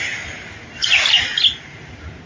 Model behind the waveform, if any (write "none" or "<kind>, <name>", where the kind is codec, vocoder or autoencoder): none